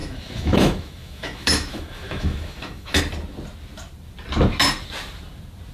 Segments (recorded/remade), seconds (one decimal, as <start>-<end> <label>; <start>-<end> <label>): 0.0-3.0 remade; 3.0-5.7 recorded